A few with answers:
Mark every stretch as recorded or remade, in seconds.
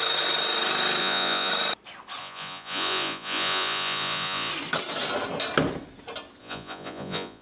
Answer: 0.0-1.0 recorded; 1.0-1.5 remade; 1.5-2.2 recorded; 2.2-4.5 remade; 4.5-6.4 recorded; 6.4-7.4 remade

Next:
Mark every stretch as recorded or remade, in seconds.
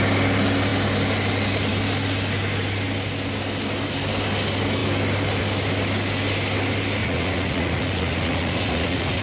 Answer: 0.0-7.0 recorded; 7.0-9.2 remade